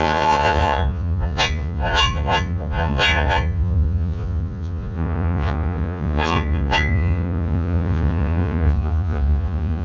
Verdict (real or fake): fake